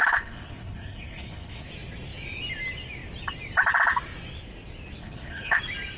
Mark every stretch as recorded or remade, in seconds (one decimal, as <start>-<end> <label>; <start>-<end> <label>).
0.0-1.7 remade; 1.7-5.0 recorded; 5.0-5.6 remade; 5.6-6.0 recorded